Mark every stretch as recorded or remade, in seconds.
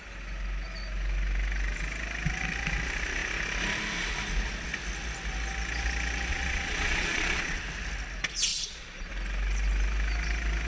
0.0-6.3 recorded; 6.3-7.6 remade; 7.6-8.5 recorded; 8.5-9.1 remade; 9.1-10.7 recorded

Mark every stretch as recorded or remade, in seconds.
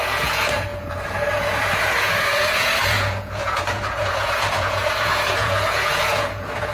0.0-6.7 remade